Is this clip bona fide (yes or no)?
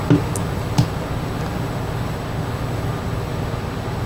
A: yes